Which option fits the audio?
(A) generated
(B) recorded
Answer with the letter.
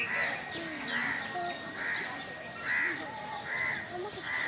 B